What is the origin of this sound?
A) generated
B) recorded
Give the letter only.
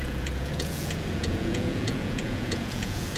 A